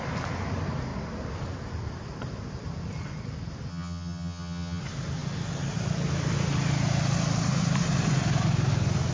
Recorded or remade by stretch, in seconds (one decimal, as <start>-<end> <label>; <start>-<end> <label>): 0.0-3.7 recorded; 3.7-4.8 remade; 4.8-9.1 recorded